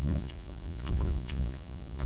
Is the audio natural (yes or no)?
no